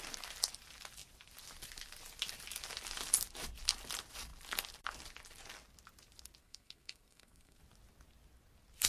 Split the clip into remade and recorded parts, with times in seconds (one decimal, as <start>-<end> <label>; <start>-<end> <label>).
0.0-6.4 recorded; 6.4-7.6 remade; 7.6-8.9 recorded